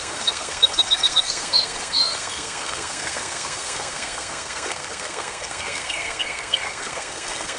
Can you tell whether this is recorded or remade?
remade